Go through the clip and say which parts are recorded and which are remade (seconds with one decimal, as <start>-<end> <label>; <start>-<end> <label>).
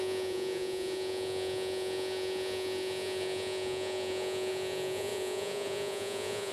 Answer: 0.0-6.5 remade